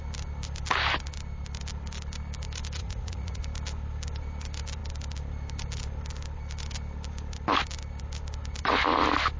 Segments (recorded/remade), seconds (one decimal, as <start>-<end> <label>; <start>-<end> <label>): 0.0-2.8 recorded; 2.8-3.4 remade; 3.4-9.4 recorded